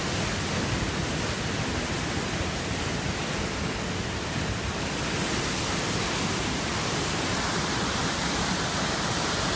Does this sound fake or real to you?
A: real